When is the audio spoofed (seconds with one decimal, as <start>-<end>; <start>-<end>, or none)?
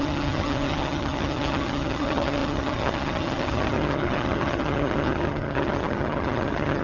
0.0-6.8